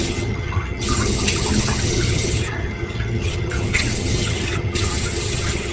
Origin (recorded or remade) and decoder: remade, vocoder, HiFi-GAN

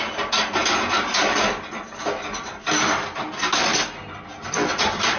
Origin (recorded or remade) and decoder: recorded